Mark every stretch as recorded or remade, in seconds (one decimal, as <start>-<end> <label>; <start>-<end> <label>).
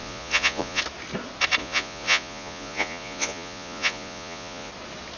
0.0-0.8 remade; 0.8-1.6 recorded; 1.6-4.7 remade; 4.7-5.2 recorded